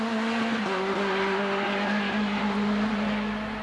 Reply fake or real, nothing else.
real